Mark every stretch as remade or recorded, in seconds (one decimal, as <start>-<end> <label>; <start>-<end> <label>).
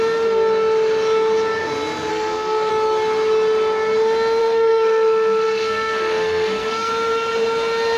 0.0-2.1 recorded; 2.1-2.7 remade; 2.7-4.4 recorded; 4.4-6.9 remade; 6.9-8.0 recorded